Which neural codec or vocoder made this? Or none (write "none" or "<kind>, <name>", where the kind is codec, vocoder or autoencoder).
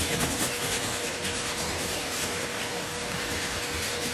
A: codec, DAC